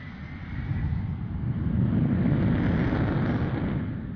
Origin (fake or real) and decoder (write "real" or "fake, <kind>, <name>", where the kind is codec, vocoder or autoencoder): real